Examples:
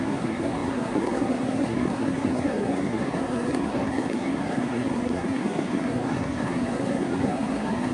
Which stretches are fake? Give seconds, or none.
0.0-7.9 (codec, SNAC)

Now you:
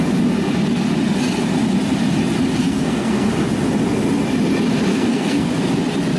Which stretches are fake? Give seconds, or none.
2.6-3.3 (codec, SNAC); 4.9-5.5

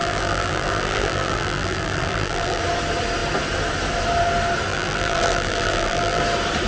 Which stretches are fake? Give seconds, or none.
0.0-2.6 (vocoder, BigVGAN v2); 4.7-6.2

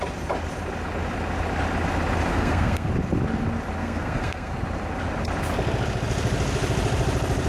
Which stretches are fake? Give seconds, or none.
2.3-2.9 (codec, SNAC); 3.8-4.5

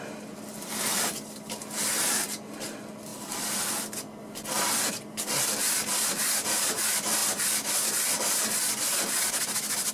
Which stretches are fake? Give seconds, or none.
0.0-3.1 (vocoder, BigVGAN v2); 4.9-7.2; 7.9-9.9